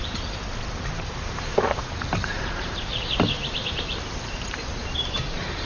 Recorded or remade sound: remade